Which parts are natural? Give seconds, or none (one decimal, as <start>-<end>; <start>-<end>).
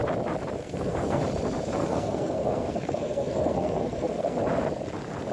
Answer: 0.0-0.6; 1.2-1.8; 4.4-5.3